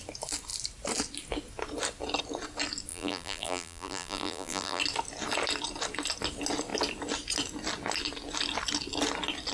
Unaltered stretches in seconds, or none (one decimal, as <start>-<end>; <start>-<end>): 0.0-2.9; 4.8-9.5